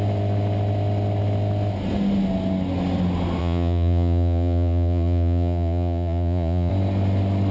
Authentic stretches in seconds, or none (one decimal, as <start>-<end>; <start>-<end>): 0.0-3.4; 6.7-7.5